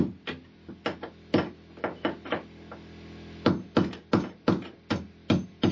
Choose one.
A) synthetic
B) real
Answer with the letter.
B